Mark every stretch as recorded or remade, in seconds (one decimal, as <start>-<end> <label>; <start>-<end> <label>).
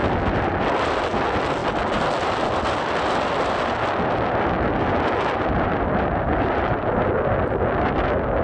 0.0-8.4 recorded